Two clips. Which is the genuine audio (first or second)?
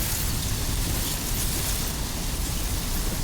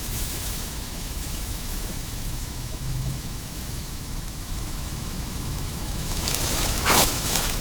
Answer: first